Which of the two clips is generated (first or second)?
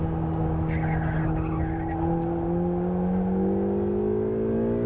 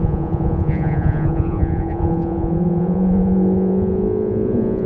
second